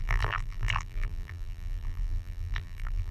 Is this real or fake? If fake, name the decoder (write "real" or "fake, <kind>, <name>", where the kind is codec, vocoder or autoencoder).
fake, vocoder, BigVGAN v2